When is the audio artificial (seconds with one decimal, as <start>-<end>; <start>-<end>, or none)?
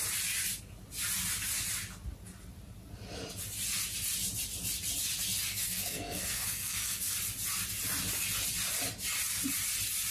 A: 5.5-7.1